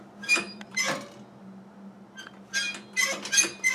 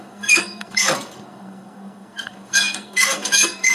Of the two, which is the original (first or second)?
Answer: first